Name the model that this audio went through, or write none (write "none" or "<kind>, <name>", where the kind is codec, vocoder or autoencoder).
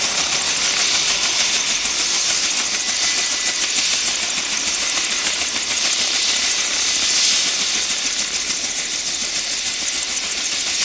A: none